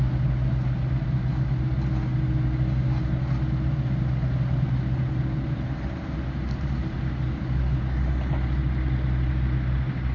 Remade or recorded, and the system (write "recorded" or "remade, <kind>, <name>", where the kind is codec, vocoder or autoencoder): recorded